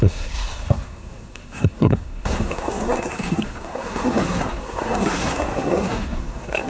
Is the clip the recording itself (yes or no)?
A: no